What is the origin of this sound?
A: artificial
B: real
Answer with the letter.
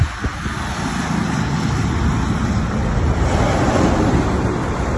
B